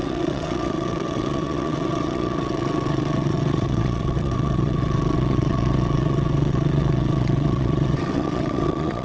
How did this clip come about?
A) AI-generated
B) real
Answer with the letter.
A